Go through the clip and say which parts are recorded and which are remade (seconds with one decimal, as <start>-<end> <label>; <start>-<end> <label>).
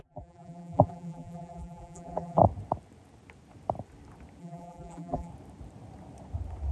0.0-2.4 remade; 2.4-4.4 recorded; 4.4-5.3 remade; 5.3-6.7 recorded